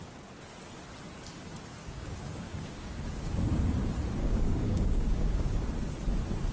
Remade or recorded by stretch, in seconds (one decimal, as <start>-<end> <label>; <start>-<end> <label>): 0.0-1.8 recorded; 1.8-3.6 remade; 3.6-4.2 recorded; 4.2-5.7 remade; 5.7-6.5 recorded